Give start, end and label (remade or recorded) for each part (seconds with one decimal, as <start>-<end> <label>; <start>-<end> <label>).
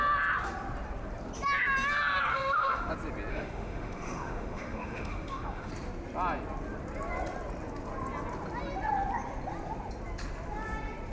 0.0-2.3 recorded; 2.3-2.9 remade; 2.9-3.3 recorded; 3.3-5.7 remade; 5.7-11.1 recorded